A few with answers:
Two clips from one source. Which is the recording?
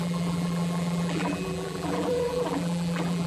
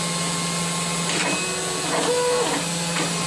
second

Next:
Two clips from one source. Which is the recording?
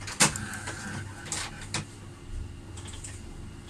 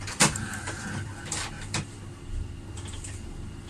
first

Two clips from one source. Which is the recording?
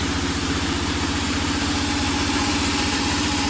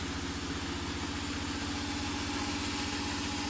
second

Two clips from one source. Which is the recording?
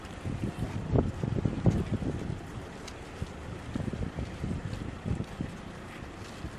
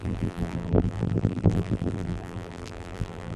first